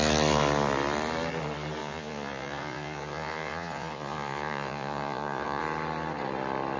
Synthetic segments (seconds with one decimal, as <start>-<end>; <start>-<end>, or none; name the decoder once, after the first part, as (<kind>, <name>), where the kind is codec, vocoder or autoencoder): 1.8-5.6 (vocoder, Vocos)